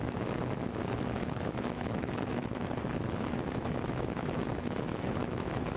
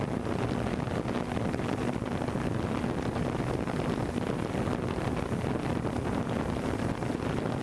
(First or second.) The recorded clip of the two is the second